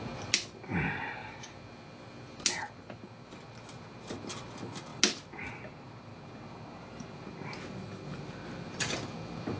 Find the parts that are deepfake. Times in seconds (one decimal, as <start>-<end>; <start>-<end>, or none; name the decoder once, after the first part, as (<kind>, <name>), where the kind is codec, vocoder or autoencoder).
none